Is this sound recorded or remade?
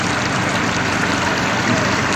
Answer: remade